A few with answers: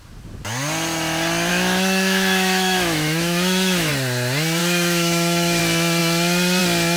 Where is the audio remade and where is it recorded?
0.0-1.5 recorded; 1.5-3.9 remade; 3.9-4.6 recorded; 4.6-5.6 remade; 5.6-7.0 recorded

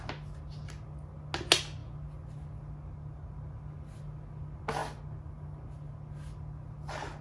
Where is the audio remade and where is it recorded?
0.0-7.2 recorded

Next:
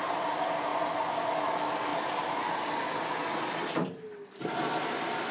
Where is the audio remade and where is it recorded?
0.0-5.3 recorded

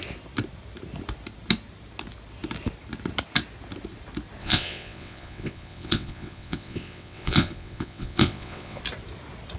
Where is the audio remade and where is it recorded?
0.0-4.4 recorded; 4.4-8.8 remade; 8.8-9.6 recorded

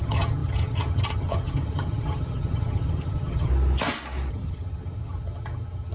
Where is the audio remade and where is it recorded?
0.0-3.5 remade; 3.5-4.3 recorded; 4.3-5.9 remade

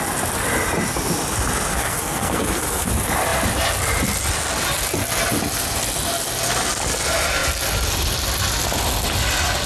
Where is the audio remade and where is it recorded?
0.0-1.7 recorded; 1.7-2.9 remade; 2.9-9.7 recorded